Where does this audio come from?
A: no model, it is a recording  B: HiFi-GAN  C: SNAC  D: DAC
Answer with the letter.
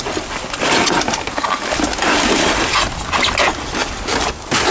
A